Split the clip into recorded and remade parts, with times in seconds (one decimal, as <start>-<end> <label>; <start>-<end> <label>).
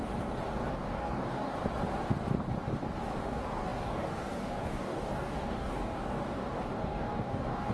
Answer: 0.0-0.7 recorded; 0.7-1.6 remade; 1.6-3.2 recorded; 3.2-7.7 remade